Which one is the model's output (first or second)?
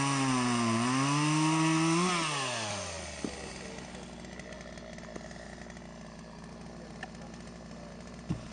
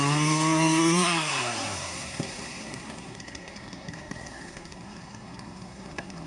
second